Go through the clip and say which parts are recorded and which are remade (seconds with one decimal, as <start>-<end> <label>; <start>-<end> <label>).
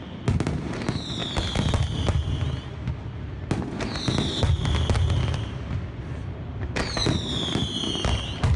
0.0-8.6 recorded